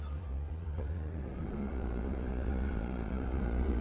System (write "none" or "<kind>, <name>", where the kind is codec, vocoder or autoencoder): vocoder, Vocos